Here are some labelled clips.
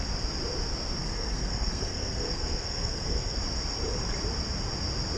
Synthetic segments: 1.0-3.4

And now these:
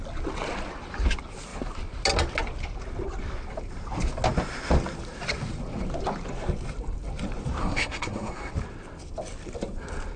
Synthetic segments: 7.6-8.5